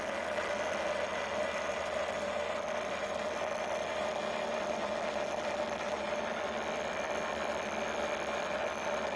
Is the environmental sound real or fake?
real